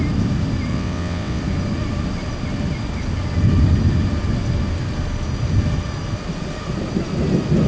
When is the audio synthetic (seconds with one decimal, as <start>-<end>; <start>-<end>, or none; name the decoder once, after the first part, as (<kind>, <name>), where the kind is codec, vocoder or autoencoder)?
0.7-1.4 (vocoder, WaveNeXt)